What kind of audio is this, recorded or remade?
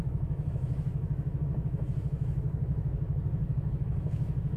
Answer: remade